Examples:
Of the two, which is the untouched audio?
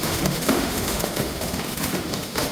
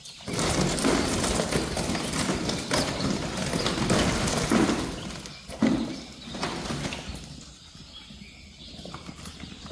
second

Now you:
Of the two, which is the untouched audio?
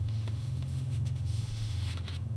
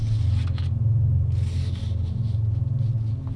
second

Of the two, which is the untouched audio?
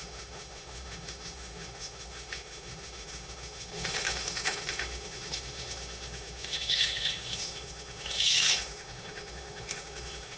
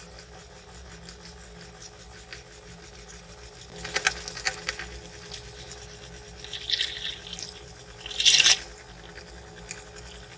second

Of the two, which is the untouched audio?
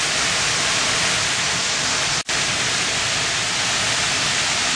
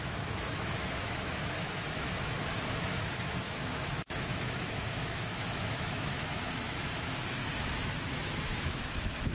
first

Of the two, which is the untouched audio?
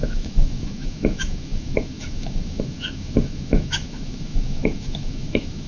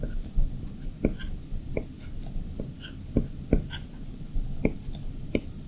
second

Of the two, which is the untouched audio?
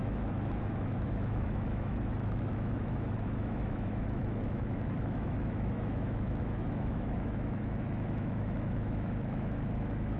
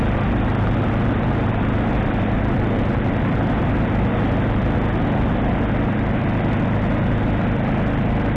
second